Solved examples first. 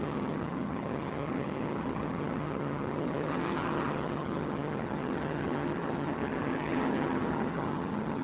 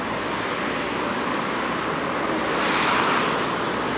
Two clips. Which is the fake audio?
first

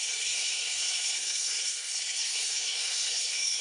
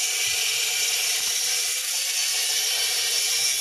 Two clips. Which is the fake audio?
first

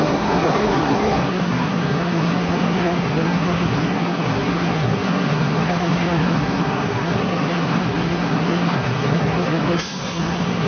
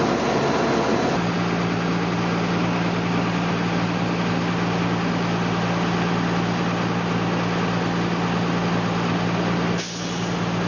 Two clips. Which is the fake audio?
first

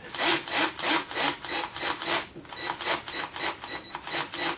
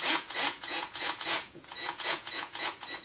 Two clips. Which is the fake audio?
second